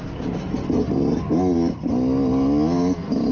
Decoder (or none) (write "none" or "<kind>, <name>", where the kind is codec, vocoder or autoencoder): none